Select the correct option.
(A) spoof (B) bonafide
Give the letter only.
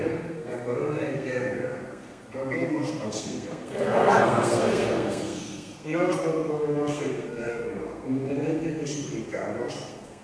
A